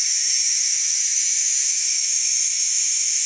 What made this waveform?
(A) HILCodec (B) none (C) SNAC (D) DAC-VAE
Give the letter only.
D